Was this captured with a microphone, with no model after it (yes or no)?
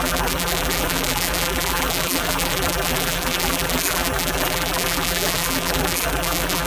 no